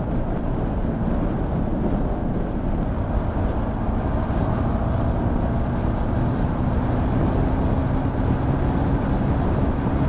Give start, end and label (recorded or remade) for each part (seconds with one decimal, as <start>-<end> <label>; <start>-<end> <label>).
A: 0.0-10.1 recorded